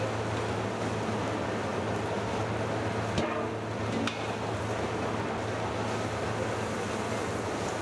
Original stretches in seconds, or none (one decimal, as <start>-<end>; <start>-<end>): 0.0-7.8